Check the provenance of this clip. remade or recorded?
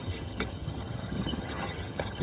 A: remade